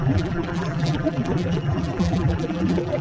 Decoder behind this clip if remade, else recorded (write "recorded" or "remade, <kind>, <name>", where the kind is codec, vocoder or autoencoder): remade, vocoder, BigVGAN v2